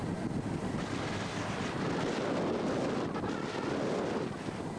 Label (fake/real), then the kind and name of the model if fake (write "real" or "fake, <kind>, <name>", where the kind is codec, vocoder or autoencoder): real